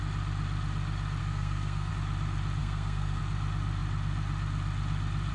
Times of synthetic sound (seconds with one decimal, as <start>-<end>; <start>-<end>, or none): 1.2-1.9; 2.6-3.2